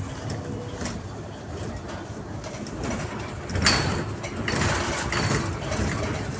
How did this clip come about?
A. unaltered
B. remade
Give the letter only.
A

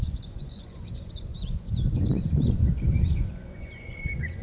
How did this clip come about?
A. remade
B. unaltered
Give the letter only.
A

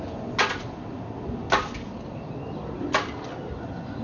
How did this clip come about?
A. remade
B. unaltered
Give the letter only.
B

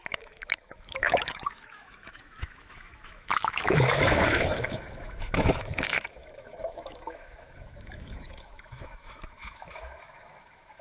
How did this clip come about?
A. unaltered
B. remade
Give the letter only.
B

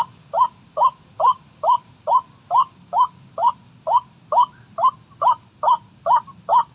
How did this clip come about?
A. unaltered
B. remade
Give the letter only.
A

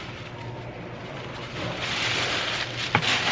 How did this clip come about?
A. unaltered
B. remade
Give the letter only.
A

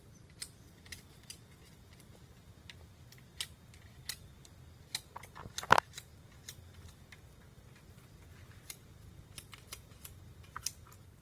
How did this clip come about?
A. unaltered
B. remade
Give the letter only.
A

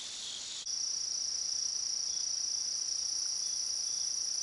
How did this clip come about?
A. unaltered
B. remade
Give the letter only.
B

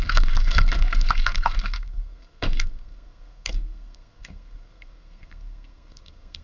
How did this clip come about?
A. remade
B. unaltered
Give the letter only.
A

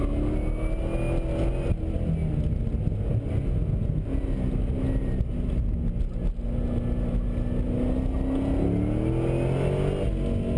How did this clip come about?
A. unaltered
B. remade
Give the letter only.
A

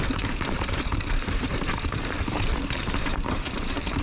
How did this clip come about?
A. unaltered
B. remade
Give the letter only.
B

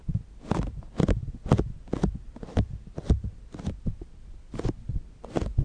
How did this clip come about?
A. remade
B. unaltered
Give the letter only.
B